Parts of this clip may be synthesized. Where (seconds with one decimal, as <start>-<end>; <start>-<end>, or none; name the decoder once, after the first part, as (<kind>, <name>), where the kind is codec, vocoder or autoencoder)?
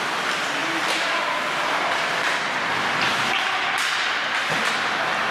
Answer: none